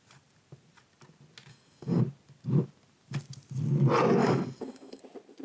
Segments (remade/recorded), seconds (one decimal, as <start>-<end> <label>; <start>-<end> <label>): 0.0-1.5 recorded; 1.5-2.0 remade; 2.0-4.2 recorded; 4.2-5.0 remade; 5.0-5.4 recorded